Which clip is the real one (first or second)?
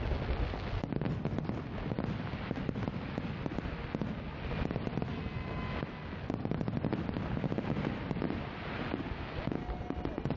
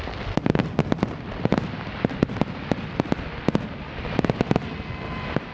first